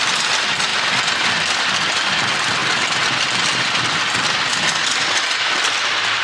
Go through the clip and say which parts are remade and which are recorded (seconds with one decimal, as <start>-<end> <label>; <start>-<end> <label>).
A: 0.0-6.2 recorded